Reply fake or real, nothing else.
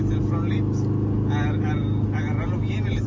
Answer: real